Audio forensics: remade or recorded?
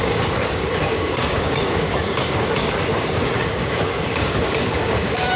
remade